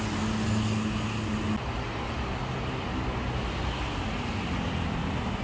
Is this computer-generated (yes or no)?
no